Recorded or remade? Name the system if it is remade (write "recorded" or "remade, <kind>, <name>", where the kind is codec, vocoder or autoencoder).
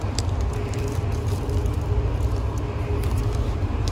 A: recorded